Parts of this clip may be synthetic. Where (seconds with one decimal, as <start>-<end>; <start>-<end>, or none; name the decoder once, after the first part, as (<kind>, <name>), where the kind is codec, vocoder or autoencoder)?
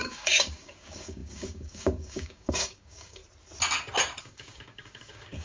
0.0-3.2 (codec, DAC); 4.2-5.4